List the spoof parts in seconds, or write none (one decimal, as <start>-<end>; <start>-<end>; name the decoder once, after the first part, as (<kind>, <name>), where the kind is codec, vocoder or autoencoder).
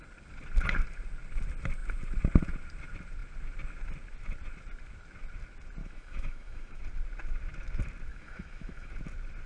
5.8-6.8 (autoencoder, DAC-VAE); 8.1-8.9